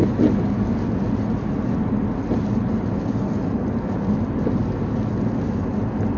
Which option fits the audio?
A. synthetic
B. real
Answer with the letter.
B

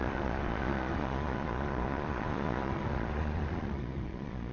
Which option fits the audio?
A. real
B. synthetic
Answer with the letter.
B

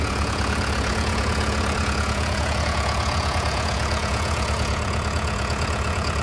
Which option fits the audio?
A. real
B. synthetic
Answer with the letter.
B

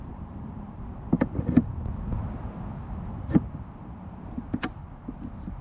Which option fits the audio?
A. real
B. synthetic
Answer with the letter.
A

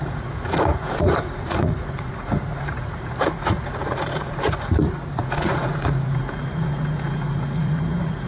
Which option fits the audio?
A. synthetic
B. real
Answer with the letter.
A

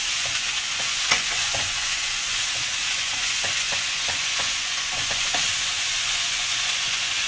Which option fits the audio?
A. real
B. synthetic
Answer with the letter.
B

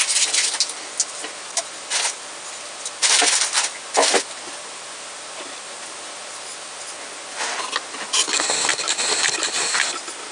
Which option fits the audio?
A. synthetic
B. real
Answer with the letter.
B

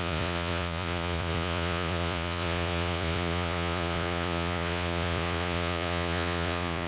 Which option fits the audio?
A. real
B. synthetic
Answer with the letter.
B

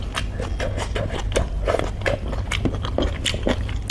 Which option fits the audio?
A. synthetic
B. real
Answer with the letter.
B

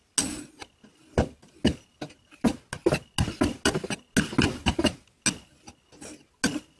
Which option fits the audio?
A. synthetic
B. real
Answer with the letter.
B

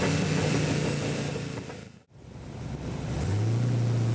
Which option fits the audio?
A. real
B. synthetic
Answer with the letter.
A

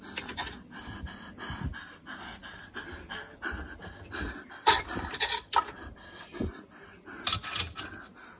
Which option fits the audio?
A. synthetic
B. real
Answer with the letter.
B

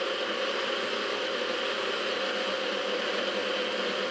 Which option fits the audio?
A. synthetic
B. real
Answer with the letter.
B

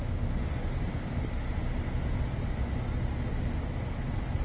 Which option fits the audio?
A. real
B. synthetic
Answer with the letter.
A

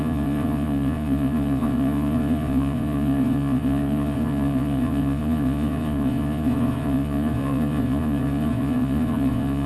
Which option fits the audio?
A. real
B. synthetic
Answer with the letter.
B